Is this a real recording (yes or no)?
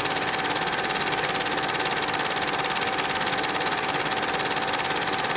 yes